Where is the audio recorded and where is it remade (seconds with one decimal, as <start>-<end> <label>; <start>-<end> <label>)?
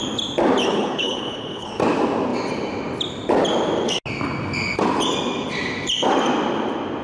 0.0-0.6 recorded; 0.6-1.7 remade; 1.7-7.0 recorded